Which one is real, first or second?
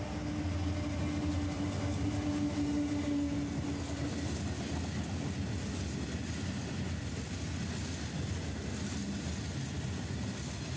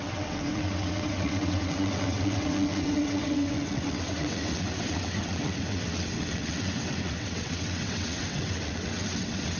first